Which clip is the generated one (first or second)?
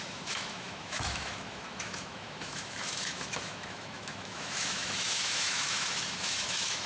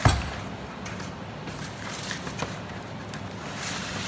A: first